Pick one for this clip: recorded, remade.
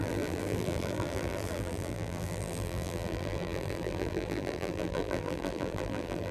remade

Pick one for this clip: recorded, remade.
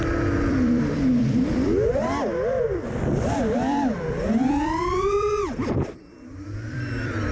remade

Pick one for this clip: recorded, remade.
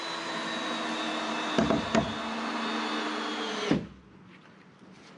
recorded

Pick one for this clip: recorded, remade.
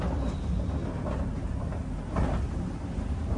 recorded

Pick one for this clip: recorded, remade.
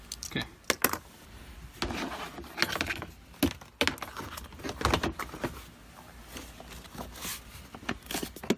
recorded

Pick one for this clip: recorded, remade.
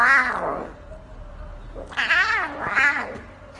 recorded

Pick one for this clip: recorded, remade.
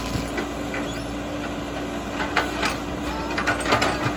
recorded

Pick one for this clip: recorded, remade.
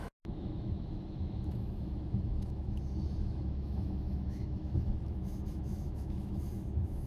remade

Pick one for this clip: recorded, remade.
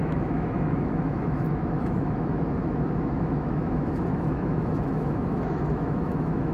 remade